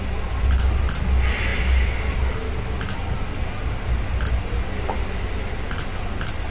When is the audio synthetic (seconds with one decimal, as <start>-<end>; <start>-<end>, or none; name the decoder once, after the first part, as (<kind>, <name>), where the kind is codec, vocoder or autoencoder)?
none